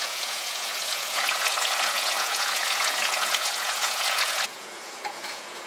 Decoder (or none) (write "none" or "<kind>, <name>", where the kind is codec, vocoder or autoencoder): vocoder, Vocos